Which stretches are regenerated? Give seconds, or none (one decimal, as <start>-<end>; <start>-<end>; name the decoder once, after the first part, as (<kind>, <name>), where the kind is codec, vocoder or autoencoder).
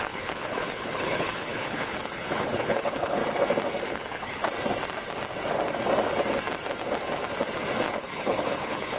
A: 0.0-3.2 (codec, HILCodec); 3.8-4.4; 7.9-9.0